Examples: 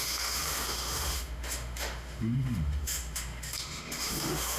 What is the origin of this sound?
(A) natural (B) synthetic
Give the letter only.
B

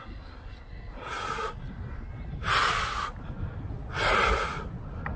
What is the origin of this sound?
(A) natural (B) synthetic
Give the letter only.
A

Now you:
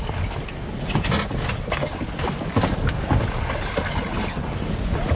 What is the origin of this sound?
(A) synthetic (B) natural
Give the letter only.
B